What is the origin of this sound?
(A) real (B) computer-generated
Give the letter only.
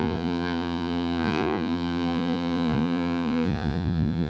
B